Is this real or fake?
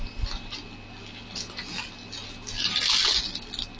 real